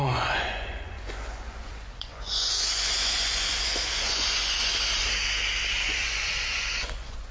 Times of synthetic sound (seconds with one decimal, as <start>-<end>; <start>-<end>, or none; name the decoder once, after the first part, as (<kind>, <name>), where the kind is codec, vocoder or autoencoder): 0.0-4.7 (vocoder, Vocos); 5.8-7.3